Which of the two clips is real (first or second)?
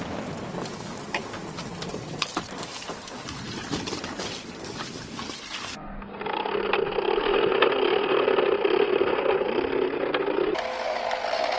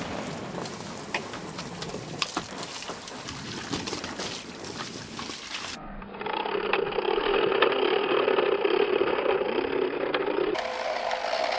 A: first